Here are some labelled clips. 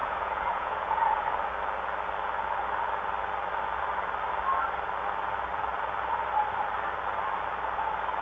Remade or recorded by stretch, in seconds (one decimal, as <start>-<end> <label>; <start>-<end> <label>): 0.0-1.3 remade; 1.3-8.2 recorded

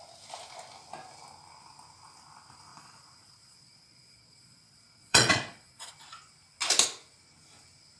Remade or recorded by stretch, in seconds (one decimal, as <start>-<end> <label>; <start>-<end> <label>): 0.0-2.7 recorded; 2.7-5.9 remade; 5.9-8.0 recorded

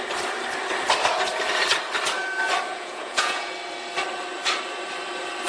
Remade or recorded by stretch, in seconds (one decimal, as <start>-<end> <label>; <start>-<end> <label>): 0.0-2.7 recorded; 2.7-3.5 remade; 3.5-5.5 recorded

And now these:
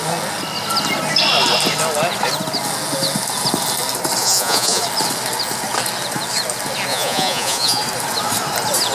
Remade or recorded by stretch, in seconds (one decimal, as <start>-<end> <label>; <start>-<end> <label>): 0.0-4.2 recorded; 4.2-4.8 remade; 4.8-6.9 recorded; 6.9-7.8 remade; 7.8-8.9 recorded